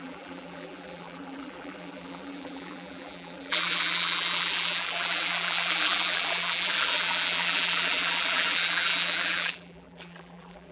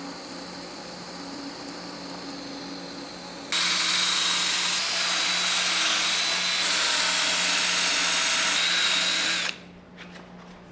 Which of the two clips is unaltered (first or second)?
second